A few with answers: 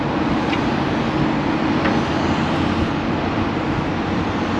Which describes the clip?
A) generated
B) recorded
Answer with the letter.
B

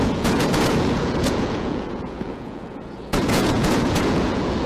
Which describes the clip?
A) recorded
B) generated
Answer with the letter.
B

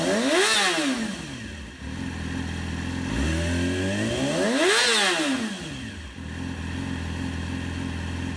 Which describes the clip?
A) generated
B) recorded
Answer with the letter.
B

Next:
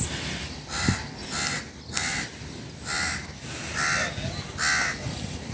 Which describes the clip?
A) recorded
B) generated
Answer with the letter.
A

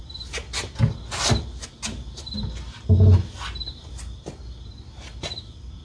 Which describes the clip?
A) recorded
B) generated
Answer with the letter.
A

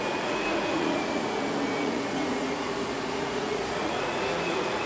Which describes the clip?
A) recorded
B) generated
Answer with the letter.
B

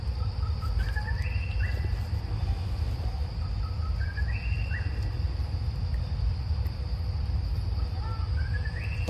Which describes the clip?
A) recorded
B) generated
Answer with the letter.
A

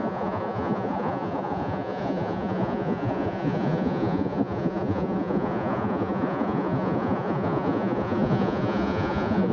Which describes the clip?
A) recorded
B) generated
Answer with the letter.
B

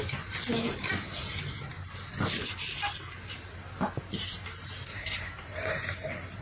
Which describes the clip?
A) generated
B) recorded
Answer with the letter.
B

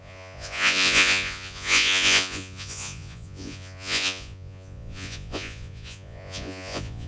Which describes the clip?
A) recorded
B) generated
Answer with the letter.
B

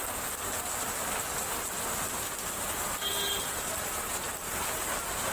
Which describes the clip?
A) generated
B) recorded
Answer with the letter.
B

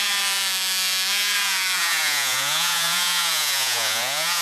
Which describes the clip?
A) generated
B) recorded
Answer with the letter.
A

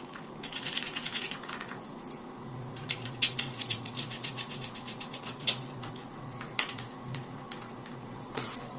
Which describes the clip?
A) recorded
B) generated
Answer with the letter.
B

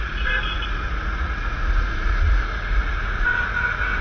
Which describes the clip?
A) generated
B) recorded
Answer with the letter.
A